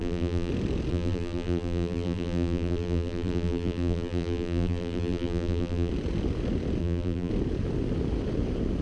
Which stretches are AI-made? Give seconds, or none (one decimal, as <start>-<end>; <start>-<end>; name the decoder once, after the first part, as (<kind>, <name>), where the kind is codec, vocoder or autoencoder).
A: 0.0-0.5 (vocoder, BigVGAN v2); 0.9-5.9; 6.8-7.3